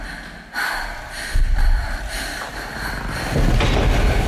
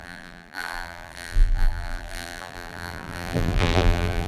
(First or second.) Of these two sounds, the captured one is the first